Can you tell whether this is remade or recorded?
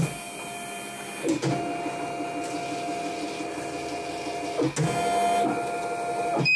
recorded